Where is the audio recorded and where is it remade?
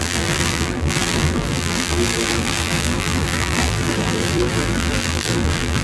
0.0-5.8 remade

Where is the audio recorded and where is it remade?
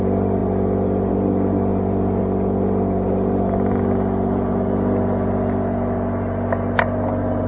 0.0-1.7 recorded; 1.7-2.2 remade; 2.2-7.5 recorded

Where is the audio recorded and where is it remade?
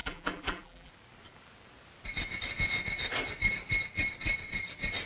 0.0-0.9 remade; 0.9-5.1 recorded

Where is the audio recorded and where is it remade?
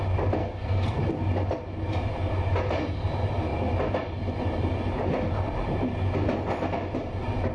0.0-0.4 recorded; 0.4-1.0 remade; 1.0-7.5 recorded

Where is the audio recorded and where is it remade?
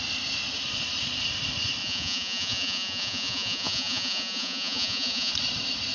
0.0-1.8 recorded; 1.8-5.3 remade; 5.3-5.9 recorded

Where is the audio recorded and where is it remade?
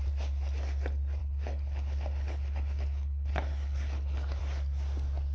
0.0-1.2 recorded; 1.2-4.4 remade; 4.4-5.3 recorded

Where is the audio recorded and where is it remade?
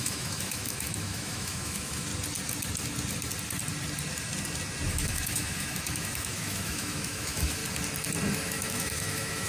0.0-2.1 remade; 2.1-4.9 recorded; 4.9-7.6 remade; 7.6-8.3 recorded; 8.3-9.5 remade